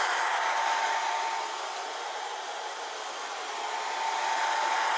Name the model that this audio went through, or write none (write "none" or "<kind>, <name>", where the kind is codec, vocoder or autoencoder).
none